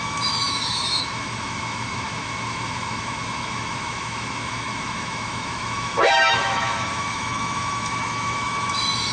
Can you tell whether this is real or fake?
fake